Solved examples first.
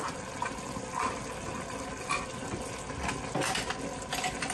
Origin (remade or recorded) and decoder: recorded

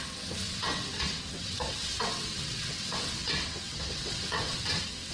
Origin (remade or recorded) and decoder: remade, vocoder, WaveNeXt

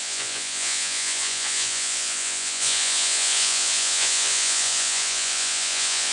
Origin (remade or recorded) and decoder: remade, vocoder, Vocos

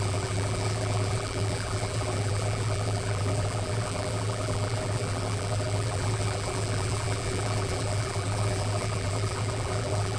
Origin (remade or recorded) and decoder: remade, vocoder, BigVGAN v2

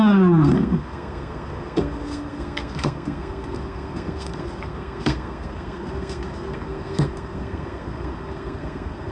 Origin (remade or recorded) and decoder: remade, codec, SNAC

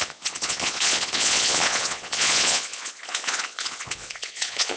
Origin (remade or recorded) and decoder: remade, vocoder, Vocos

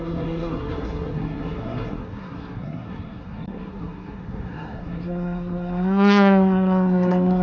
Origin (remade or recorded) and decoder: remade, codec, SNAC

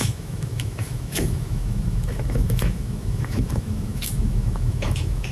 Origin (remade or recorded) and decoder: remade, autoencoder, DAC-VAE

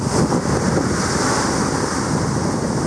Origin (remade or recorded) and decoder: recorded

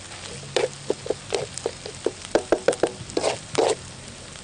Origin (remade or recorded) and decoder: recorded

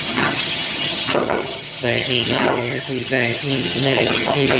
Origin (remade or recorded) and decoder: remade, vocoder, HiFi-GAN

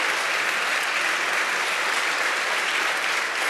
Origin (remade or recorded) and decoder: recorded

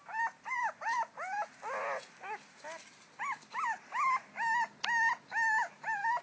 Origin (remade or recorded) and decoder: recorded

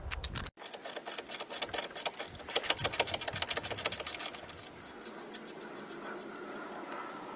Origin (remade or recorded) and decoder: recorded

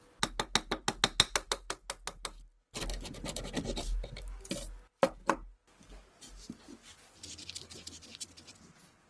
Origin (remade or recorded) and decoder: recorded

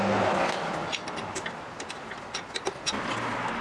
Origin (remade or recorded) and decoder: recorded